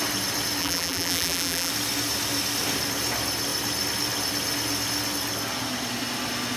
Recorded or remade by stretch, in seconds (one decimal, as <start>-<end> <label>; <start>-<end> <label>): 0.0-0.6 recorded; 0.6-1.7 remade; 1.7-6.6 recorded